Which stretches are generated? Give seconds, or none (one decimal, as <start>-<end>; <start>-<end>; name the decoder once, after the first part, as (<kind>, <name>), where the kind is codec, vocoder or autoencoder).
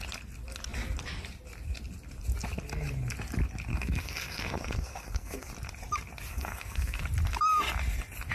3.7-5.5 (codec, SNAC); 6.3-7.0